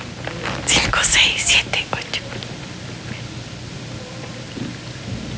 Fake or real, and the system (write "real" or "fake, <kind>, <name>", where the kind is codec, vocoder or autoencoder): real